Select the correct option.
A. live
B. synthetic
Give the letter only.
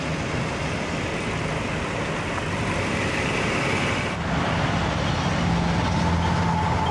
A